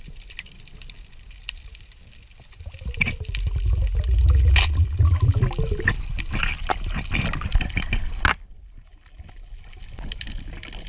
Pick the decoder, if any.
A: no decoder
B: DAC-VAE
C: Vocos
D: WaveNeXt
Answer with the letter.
A